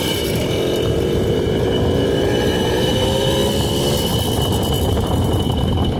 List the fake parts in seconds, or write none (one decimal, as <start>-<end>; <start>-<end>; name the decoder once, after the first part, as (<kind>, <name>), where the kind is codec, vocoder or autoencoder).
0.0-3.4 (vocoder, BigVGAN v2); 4.8-6.0